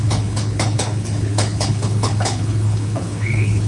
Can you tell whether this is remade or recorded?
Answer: remade